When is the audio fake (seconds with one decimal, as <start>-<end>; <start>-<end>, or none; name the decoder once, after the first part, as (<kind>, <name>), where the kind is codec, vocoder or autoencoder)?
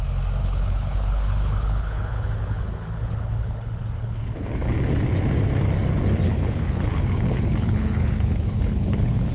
0.4-4.7 (codec, HILCodec); 6.3-9.3